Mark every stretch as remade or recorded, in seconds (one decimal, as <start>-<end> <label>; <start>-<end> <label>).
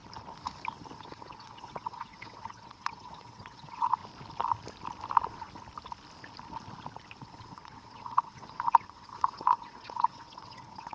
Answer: 0.0-1.0 recorded; 1.0-4.0 remade; 4.0-7.2 recorded; 7.2-10.9 remade